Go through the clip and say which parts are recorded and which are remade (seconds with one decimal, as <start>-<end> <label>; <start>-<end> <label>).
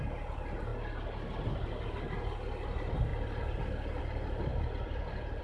0.0-5.4 recorded